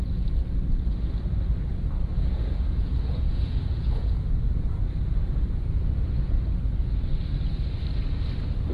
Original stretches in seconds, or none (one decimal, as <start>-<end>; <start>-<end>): 0.0-2.1; 6.1-8.7

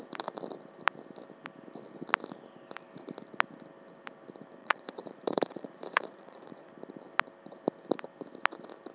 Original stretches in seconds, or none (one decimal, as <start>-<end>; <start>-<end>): 0.0-4.6; 6.7-8.9

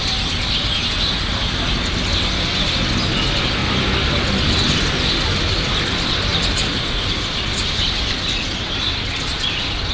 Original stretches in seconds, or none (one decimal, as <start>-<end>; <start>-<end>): 0.0-9.9

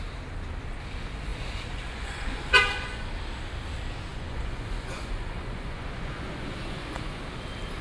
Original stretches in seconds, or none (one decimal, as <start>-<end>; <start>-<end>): 0.0-1.3; 3.1-4.1; 7.2-7.8

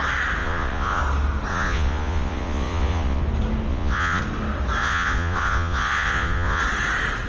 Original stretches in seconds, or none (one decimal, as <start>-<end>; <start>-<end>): 0.0-0.4; 1.0-1.5; 3.2-3.7; 4.2-4.8; 6.6-7.3

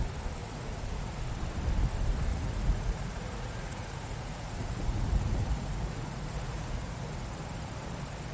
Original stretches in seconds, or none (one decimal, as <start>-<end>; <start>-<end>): 0.0-0.4; 1.2-2.3; 7.3-8.3